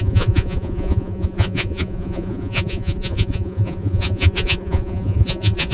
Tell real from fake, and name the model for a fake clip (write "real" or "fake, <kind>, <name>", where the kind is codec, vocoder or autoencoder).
fake, vocoder, Vocos